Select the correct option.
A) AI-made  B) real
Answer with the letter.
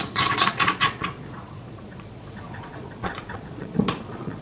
A